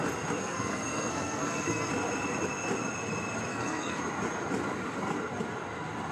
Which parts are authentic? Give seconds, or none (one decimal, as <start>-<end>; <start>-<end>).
0.0-0.4; 1.9-3.5; 4.0-6.1